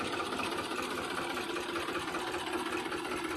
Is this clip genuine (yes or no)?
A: yes